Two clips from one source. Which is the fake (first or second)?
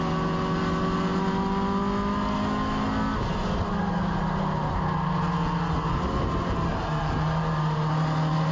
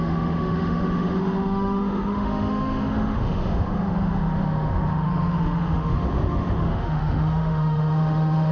second